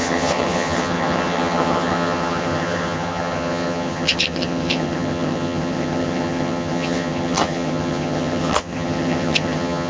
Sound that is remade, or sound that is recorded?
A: remade